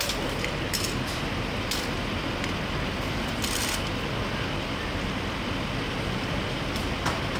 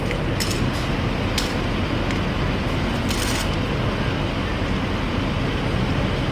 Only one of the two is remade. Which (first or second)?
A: first